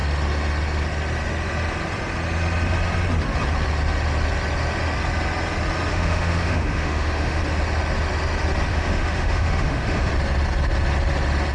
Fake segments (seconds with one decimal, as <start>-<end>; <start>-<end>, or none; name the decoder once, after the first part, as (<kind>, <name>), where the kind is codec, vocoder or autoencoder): 5.9-7.4 (autoencoder, DAC-VAE); 8.7-10.1